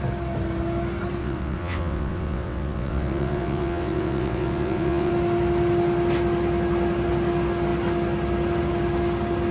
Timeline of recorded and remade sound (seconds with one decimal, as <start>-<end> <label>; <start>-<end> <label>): 0.0-1.2 recorded; 1.2-5.1 remade; 5.1-9.5 recorded